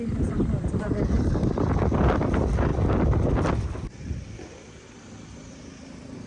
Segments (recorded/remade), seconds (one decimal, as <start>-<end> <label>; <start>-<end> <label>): 0.0-6.3 recorded